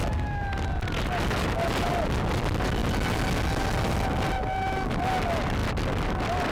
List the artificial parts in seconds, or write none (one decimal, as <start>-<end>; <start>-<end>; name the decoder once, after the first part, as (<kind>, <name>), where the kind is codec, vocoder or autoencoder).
none